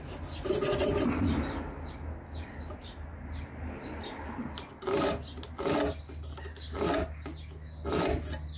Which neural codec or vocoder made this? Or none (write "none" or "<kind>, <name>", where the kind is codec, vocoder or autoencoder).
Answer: none